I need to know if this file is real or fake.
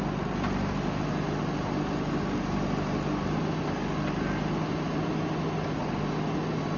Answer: real